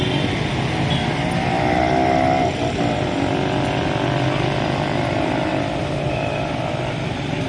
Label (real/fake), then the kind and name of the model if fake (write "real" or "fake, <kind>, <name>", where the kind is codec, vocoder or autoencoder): real